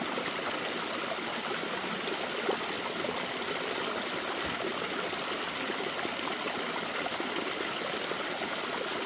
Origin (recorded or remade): recorded